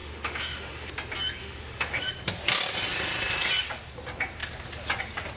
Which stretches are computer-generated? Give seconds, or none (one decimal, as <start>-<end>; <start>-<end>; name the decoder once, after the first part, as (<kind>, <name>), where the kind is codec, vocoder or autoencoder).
0.0-0.9 (autoencoder, DAC-VAE); 1.4-2.1